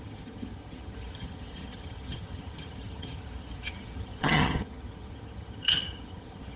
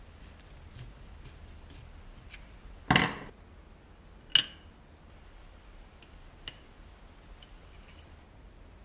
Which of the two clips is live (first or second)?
second